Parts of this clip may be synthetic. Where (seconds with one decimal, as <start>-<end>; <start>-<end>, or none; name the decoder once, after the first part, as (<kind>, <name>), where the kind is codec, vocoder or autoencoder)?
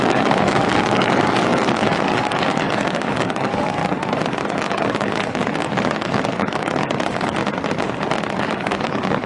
0.0-3.8 (codec, DAC); 4.5-7.4; 8.3-9.3